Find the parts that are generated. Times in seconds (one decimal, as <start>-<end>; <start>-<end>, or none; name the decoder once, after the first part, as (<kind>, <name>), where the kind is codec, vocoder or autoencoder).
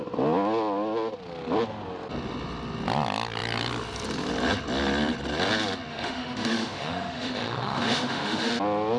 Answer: 5.9-8.5 (autoencoder, DAC-VAE)